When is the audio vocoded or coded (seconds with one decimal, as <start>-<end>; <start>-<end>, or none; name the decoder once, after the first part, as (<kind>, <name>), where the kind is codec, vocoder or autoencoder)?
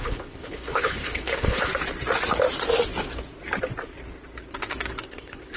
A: 0.0-1.7 (codec, HILCodec); 5.1-5.6